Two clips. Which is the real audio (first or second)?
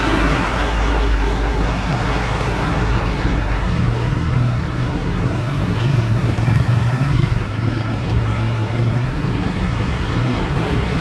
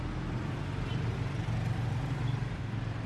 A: second